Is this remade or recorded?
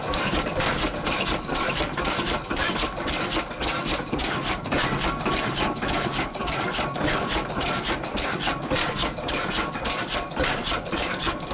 remade